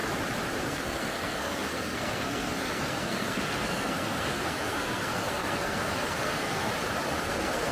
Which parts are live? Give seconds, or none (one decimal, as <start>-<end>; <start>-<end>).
0.0-0.6; 6.7-7.2